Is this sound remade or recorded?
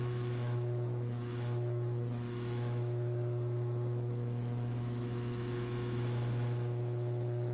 remade